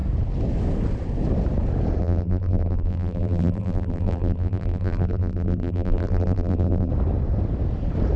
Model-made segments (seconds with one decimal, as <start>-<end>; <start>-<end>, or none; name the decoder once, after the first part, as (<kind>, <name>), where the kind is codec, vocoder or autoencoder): 2.0-6.9 (vocoder, BigVGAN v2)